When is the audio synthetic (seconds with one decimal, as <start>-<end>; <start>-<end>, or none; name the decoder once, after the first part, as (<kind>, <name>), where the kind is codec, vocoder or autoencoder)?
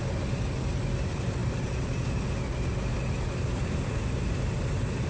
none